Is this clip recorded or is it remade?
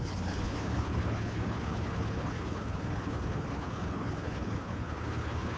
remade